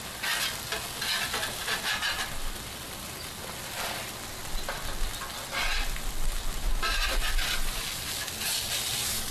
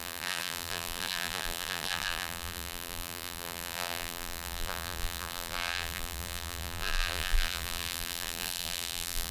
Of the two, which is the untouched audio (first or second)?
first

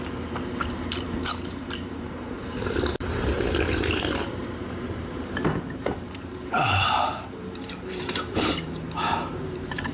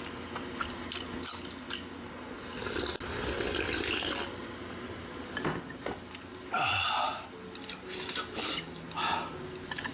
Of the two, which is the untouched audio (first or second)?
second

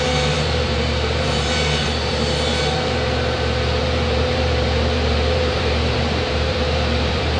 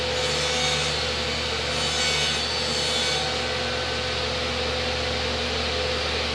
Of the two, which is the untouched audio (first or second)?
second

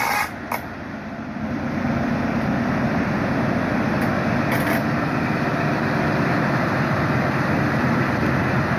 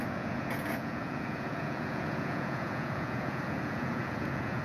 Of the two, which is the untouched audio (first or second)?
first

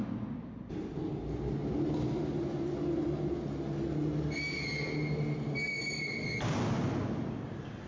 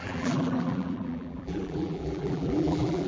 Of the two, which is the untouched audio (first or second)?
first